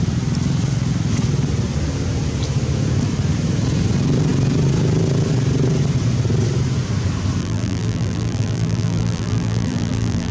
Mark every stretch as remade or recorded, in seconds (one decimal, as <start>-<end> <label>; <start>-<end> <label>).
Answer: 0.0-7.4 recorded; 7.4-10.3 remade

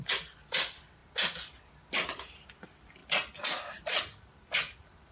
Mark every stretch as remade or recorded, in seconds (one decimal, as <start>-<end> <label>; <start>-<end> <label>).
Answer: 0.0-1.0 remade; 1.0-1.6 recorded; 1.6-3.0 remade; 3.0-4.3 recorded; 4.3-5.1 remade

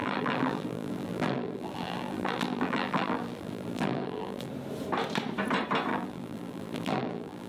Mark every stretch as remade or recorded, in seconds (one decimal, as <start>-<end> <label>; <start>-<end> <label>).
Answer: 0.0-4.5 remade; 4.5-5.9 recorded; 5.9-7.5 remade

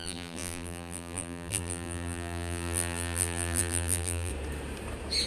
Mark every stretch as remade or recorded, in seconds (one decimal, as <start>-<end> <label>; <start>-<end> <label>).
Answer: 0.0-4.3 remade; 4.3-5.3 recorded